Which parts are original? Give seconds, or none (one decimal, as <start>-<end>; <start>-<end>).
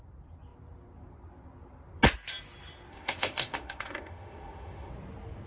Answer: 0.0-2.9; 4.9-5.5